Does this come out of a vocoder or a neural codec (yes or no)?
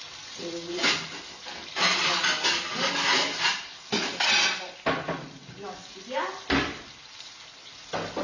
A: no